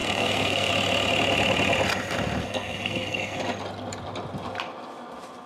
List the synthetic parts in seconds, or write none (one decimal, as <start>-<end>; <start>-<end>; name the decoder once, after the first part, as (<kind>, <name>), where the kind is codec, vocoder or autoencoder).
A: 0.0-0.7 (codec, SNAC); 2.4-3.4